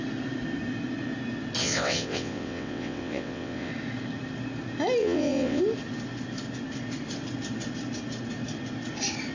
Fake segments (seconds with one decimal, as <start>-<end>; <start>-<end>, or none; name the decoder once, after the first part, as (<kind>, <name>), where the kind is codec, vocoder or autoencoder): 1.6-3.7 (vocoder, WaveNeXt); 5.0-5.6